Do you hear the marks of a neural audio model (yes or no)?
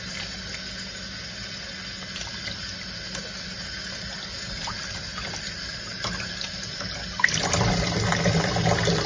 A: no